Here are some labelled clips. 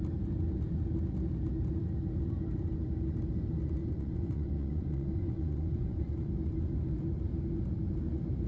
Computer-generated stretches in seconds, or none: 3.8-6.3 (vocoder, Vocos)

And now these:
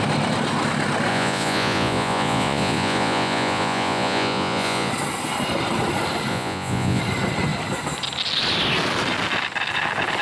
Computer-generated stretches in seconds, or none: 1.1-4.9 (vocoder, Vocos); 6.3-7.0

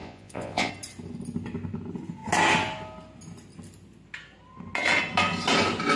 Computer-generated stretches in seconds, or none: 0.0-0.7 (vocoder, Vocos)

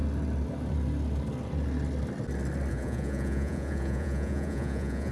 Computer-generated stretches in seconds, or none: 2.7-5.1 (vocoder, Vocos)

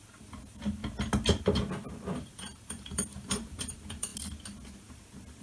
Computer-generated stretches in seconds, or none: 0.0-0.8 (vocoder, BigVGAN v2); 2.2-4.1

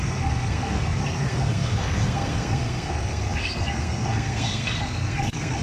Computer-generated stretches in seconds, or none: 0.0-5.6 (codec, SNAC)

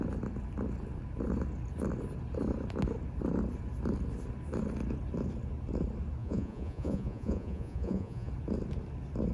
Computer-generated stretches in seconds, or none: 6.2-8.3 (vocoder, Vocos)

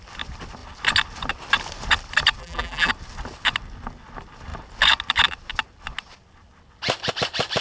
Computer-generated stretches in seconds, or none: 2.4-2.9 (vocoder, BigVGAN v2)